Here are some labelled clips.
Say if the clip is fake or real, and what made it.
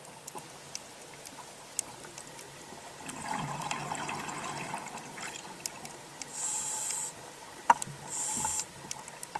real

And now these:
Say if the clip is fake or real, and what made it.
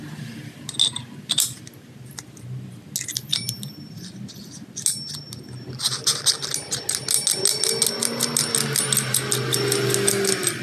real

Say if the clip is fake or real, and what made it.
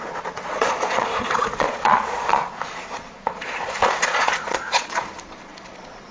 fake, vocoder, Vocos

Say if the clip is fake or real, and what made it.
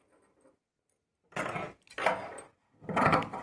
real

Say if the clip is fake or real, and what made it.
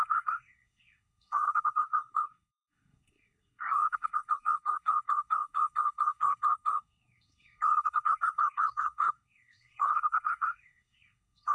fake, codec, SNAC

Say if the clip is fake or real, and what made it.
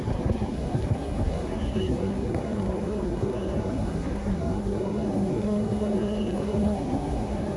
fake, codec, SNAC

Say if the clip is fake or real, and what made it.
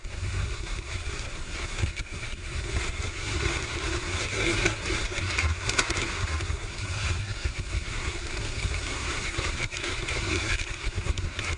fake, codec, SNAC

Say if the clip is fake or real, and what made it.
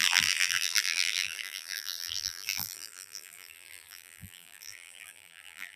fake, vocoder, BigVGAN v2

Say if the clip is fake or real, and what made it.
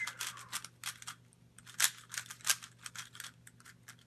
real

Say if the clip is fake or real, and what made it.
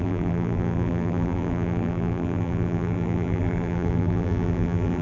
fake, vocoder, BigVGAN v2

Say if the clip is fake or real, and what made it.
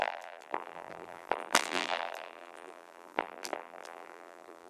fake, vocoder, BigVGAN v2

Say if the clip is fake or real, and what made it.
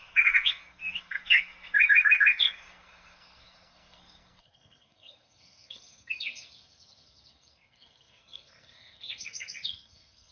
fake, codec, SNAC